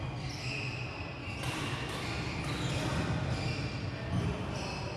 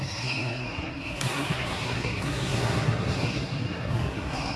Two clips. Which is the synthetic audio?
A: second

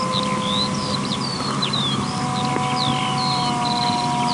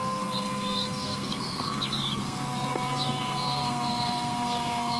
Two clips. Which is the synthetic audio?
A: second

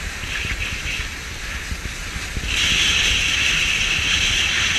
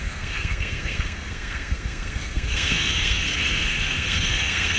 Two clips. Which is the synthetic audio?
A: second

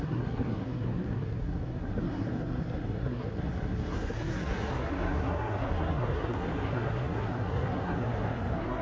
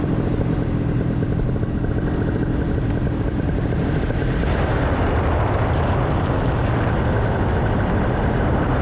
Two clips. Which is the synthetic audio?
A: first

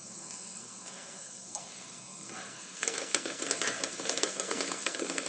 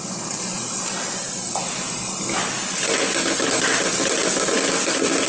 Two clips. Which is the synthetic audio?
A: first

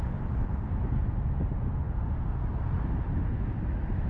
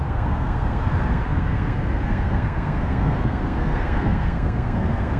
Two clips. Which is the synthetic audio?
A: second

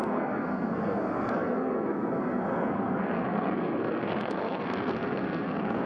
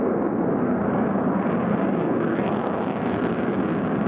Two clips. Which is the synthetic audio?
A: first